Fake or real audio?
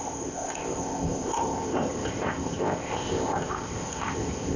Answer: fake